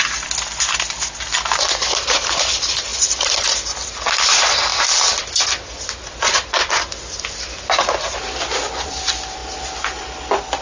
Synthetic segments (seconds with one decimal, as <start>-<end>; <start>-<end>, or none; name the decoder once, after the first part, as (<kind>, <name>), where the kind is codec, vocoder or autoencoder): none